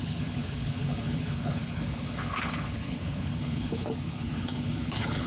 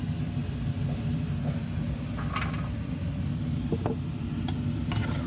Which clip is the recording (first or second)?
second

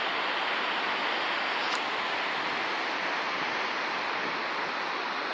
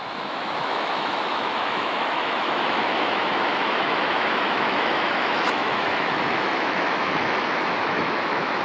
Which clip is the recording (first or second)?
first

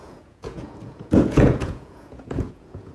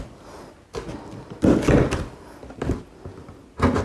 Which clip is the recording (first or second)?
second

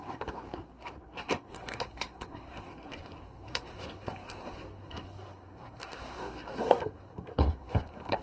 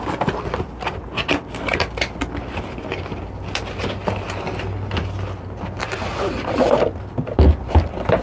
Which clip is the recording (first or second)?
second